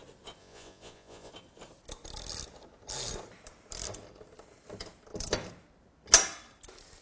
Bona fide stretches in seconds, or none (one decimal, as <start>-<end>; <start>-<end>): 0.0-0.4; 1.3-7.0